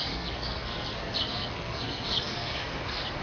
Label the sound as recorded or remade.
remade